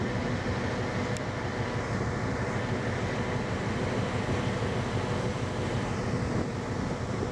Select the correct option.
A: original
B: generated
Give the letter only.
A